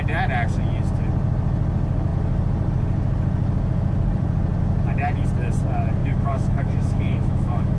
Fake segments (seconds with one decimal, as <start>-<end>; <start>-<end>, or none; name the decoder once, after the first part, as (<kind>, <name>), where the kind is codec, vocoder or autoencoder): 6.0-7.8 (autoencoder, DAC-VAE)